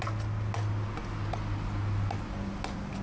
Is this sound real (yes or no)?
yes